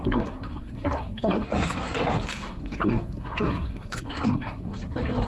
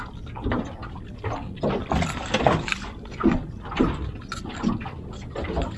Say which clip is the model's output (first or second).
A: first